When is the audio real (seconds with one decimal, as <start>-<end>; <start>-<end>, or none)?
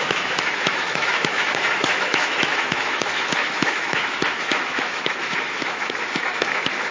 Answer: none